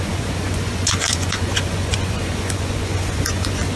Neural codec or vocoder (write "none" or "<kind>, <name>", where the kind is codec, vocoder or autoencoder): vocoder, Vocos